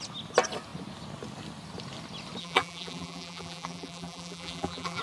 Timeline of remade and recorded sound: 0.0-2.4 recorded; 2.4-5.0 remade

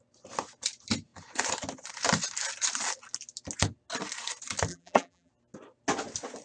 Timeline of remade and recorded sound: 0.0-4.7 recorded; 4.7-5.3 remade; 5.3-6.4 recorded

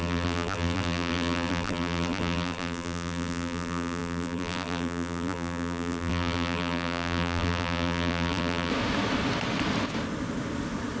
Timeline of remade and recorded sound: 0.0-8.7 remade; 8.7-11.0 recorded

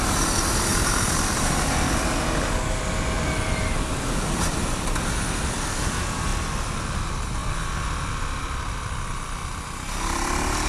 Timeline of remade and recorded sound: 0.0-10.7 recorded

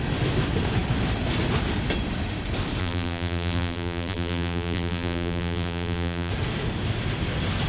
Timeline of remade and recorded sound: 0.0-2.8 recorded; 2.8-6.3 remade; 6.3-7.7 recorded

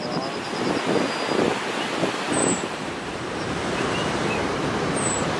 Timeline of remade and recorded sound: 0.0-2.4 recorded; 2.4-4.3 remade; 4.3-5.4 recorded

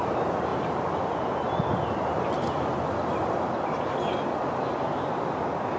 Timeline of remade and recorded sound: 0.0-5.8 recorded

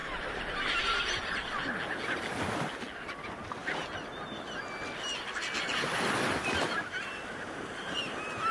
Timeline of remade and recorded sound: 0.0-1.2 remade; 1.2-8.5 recorded